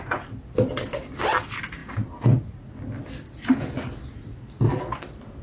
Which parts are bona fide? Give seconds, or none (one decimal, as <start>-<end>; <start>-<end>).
0.0-5.4